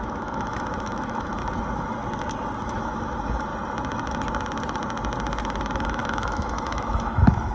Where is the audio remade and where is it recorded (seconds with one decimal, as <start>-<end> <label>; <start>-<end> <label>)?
0.0-1.4 remade; 1.4-2.6 recorded; 2.6-3.5 remade; 3.5-5.4 recorded; 5.4-7.5 remade